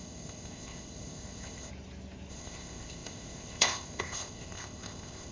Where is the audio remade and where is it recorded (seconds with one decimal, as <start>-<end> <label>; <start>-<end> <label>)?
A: 0.0-1.7 remade; 1.7-2.3 recorded; 2.3-5.3 remade

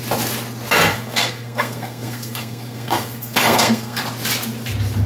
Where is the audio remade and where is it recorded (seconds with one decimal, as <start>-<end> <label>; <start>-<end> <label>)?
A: 0.0-0.9 recorded; 0.9-4.0 remade; 4.0-5.1 recorded

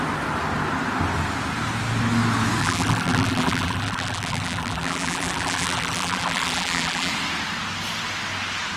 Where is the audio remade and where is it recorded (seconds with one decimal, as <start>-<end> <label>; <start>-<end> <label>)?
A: 0.0-2.6 recorded; 2.6-7.1 remade; 7.1-8.8 recorded

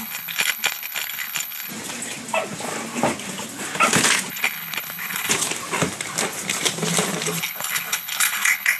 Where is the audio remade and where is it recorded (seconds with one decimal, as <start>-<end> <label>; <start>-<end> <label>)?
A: 0.0-1.7 remade; 1.7-4.3 recorded; 4.3-5.3 remade; 5.3-7.4 recorded; 7.4-8.8 remade

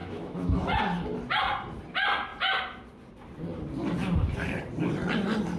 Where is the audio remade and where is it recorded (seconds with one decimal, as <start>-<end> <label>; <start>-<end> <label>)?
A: 0.0-0.8 remade; 0.8-5.6 recorded

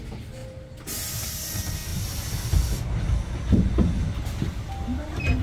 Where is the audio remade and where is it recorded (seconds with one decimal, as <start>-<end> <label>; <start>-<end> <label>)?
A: 0.0-5.4 recorded

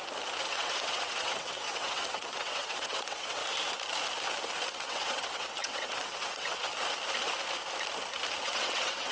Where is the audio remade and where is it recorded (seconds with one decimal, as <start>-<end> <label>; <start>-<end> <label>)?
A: 0.0-0.5 recorded; 0.5-3.4 remade; 3.4-4.7 recorded; 4.7-6.7 remade; 6.7-8.4 recorded; 8.4-9.1 remade